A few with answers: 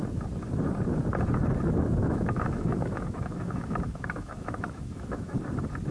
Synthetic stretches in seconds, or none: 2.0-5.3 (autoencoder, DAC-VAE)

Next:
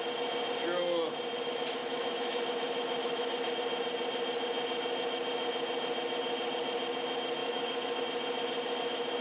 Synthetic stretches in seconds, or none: 1.8-3.5 (autoencoder, DAC-VAE); 7.4-8.0

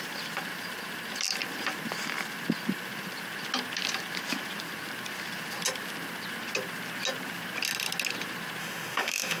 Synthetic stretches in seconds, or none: 8.6-9.4 (autoencoder, DAC-VAE)

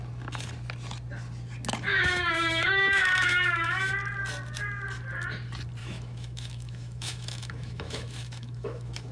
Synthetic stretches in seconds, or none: 1.9-3.9 (autoencoder, DAC-VAE); 5.8-9.1

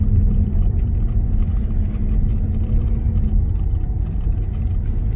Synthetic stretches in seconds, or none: none

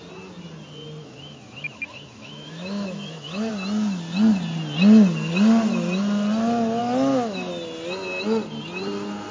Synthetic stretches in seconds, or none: 1.0-3.5 (autoencoder, DAC-VAE); 6.8-7.5

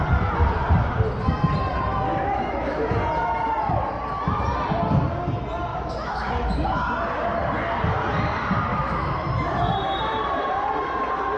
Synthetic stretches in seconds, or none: 2.1-3.0 (autoencoder, DAC-VAE); 5.7-6.3; 8.7-9.7

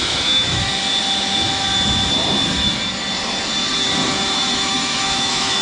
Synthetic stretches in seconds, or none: 0.0-0.7 (autoencoder, DAC-VAE); 4.1-5.6